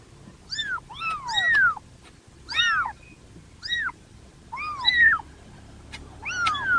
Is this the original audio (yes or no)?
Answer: yes